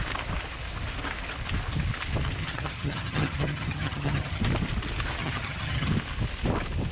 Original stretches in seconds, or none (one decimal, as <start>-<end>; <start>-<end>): 0.0-2.4; 4.4-5.2; 5.9-6.9